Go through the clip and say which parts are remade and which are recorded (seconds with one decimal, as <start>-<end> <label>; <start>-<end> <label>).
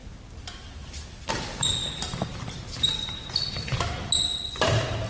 0.0-1.8 remade; 1.8-5.1 recorded